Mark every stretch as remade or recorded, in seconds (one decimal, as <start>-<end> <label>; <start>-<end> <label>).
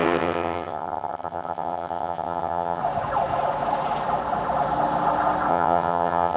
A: 0.0-2.8 remade; 2.8-5.5 recorded; 5.5-6.4 remade